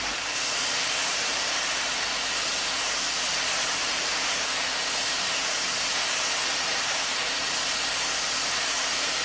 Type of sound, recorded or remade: remade